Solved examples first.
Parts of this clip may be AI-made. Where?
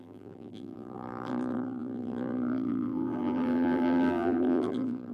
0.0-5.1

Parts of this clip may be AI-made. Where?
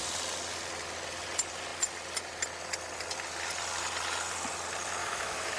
5.0-5.6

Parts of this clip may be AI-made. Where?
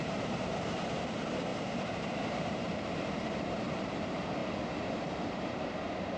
0.0-6.2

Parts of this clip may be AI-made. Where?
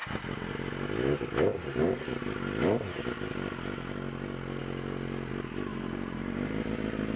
5.7-6.7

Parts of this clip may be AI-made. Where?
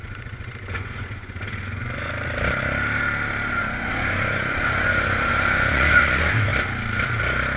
0.0-2.1; 3.5-6.5